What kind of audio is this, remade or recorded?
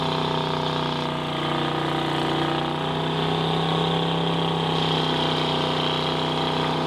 recorded